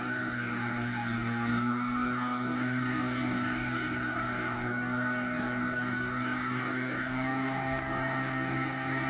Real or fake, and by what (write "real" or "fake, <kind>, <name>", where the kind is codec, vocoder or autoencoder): fake, codec, DAC